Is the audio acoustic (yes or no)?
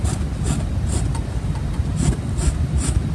yes